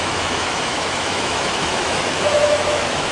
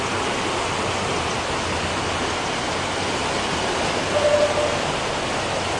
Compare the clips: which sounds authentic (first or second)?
second